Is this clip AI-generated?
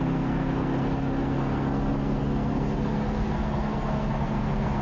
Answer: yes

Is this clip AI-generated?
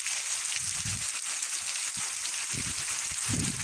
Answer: no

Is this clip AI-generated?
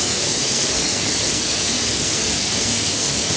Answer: yes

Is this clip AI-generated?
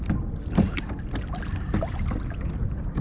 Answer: no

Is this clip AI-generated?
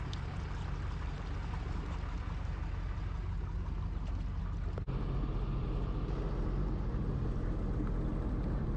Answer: no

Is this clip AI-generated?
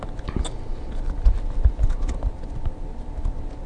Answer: no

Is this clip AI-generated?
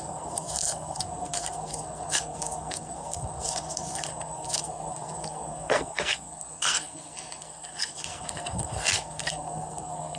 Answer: yes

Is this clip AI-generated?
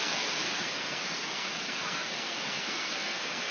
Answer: yes